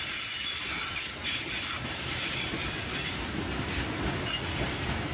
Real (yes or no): yes